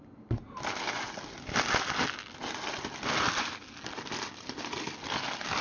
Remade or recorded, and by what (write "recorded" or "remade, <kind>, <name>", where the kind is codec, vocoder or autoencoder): recorded